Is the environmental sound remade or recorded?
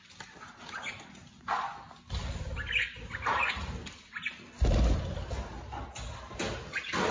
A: recorded